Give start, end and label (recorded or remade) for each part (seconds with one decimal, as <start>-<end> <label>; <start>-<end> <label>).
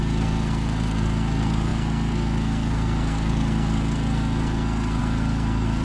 0.0-5.8 remade